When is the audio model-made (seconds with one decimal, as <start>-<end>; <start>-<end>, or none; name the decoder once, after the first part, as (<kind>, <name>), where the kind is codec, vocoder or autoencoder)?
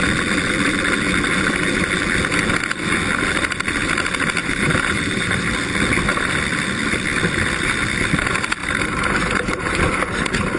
4.4-5.5 (vocoder, BigVGAN v2); 8.6-9.8